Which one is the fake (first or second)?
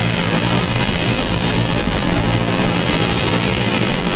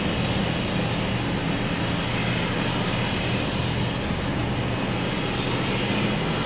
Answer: first